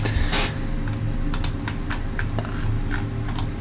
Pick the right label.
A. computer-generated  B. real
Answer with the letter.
B